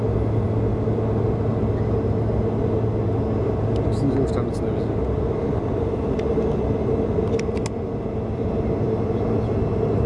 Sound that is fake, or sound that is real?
real